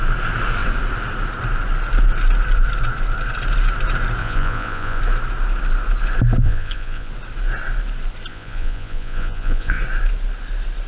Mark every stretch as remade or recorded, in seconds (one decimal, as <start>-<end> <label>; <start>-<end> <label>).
0.0-4.2 recorded; 4.2-5.0 remade; 5.0-6.4 recorded; 6.4-7.1 remade; 7.1-8.3 recorded; 8.3-9.8 remade; 9.8-10.9 recorded